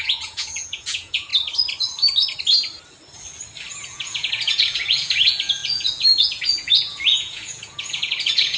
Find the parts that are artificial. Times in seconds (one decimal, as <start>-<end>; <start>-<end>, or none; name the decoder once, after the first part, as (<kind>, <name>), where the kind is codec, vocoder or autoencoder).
0.0-1.3 (vocoder, Vocos); 3.7-8.6